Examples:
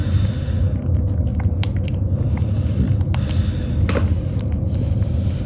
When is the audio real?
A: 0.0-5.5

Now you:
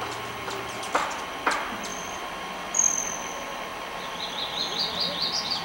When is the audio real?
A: 0.0-1.9; 2.9-5.6

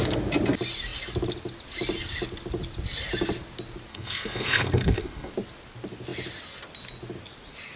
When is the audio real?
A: 0.0-3.9; 5.3-7.8

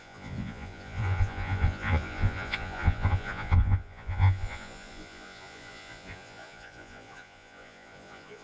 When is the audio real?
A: none

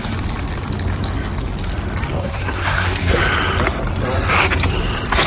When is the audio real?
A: 0.0-2.2; 3.2-5.3

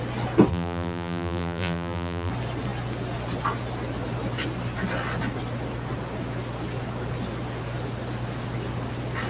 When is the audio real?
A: 0.0-0.5; 2.3-9.3

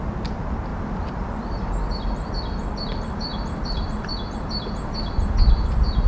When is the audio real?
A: 0.0-0.7; 1.7-3.3; 4.1-6.1

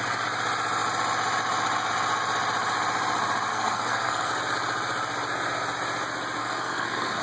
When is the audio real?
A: 0.0-3.5; 4.3-6.4